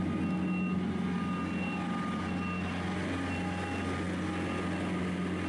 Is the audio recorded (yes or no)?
yes